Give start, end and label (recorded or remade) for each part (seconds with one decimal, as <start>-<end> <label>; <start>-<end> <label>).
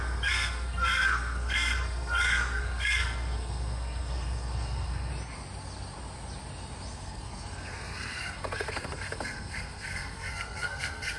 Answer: 0.0-5.1 remade; 5.1-6.9 recorded; 6.9-11.2 remade